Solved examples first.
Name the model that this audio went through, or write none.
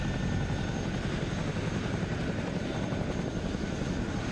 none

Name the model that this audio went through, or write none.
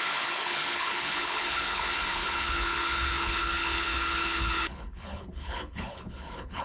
codec, HILCodec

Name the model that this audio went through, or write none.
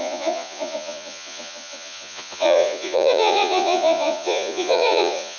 vocoder, Vocos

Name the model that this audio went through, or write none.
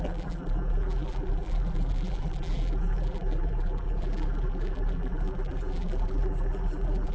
vocoder, BigVGAN v2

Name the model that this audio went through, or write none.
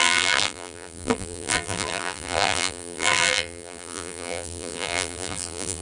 vocoder, BigVGAN v2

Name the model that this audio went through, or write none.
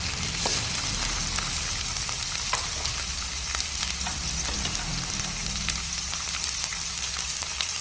none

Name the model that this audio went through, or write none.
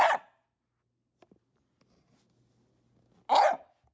none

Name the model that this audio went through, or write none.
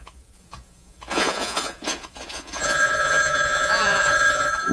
vocoder, Vocos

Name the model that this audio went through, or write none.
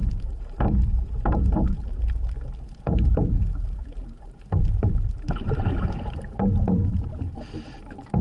vocoder, BigVGAN v2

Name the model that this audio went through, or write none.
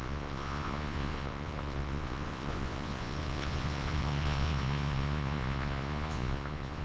vocoder, Vocos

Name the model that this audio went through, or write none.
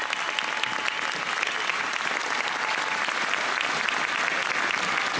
none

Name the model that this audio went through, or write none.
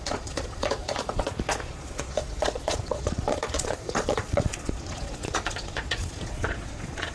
vocoder, Vocos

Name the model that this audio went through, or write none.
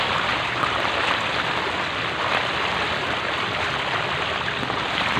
none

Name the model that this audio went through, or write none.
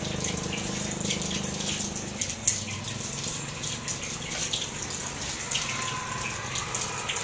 none